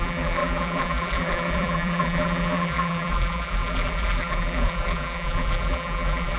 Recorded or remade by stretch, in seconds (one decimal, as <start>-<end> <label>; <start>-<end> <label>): 0.0-6.4 remade